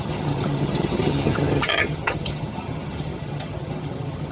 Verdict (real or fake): fake